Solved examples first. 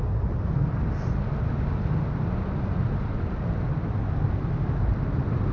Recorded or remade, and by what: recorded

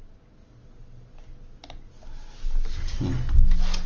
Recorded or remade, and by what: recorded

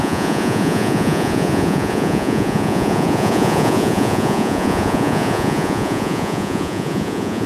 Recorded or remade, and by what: remade, vocoder, Vocos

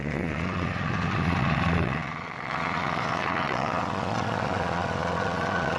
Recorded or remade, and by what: remade, vocoder, Vocos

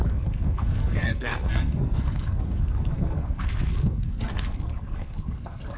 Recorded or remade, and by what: remade, codec, SNAC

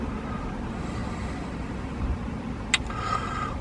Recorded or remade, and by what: recorded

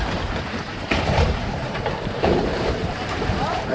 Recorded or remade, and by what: remade, vocoder, BigVGAN v2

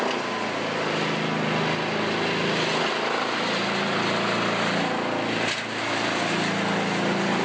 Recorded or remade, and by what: recorded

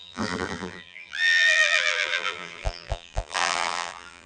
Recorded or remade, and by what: remade, vocoder, BigVGAN v2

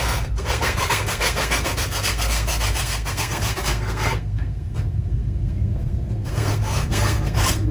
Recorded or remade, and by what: remade, codec, SNAC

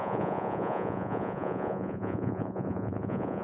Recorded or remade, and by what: remade, vocoder, Vocos